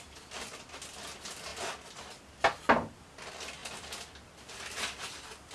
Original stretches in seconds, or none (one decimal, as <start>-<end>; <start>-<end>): 0.0-5.5